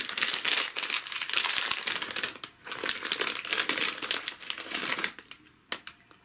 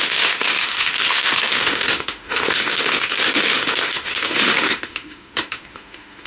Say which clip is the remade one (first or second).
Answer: second